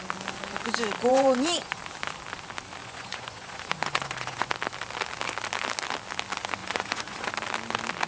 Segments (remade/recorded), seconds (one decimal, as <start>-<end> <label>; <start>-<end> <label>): 0.0-1.1 recorded; 1.1-1.8 remade; 1.8-2.8 recorded; 2.8-4.5 remade; 4.5-6.6 recorded; 6.6-7.3 remade; 7.3-8.1 recorded